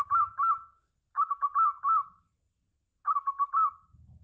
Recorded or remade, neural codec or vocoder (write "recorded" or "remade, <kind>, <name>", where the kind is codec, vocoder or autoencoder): remade, codec, DAC